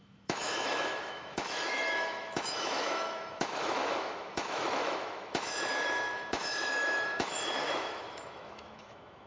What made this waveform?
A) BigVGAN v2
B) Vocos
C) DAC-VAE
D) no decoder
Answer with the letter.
C